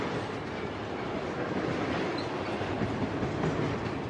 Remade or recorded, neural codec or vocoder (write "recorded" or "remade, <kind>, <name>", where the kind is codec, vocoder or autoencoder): recorded